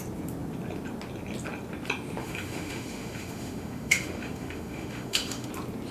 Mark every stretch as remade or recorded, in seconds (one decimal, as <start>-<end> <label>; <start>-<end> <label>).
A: 0.0-2.2 recorded; 2.2-5.5 remade; 5.5-5.9 recorded